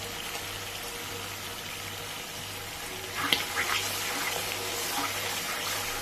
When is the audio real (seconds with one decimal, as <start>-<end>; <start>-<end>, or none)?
0.0-6.0